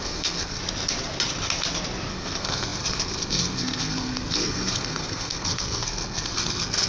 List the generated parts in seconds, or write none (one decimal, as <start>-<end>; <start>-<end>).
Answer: 0.0-0.6; 2.1-6.9